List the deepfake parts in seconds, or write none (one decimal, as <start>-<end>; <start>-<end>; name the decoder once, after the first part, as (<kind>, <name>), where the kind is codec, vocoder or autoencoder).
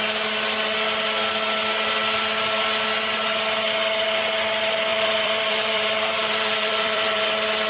4.9-7.2 (vocoder, BigVGAN v2)